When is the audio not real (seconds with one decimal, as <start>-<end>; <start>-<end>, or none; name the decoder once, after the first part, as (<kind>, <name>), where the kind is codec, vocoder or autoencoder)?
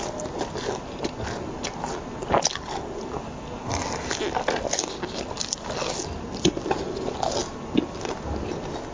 none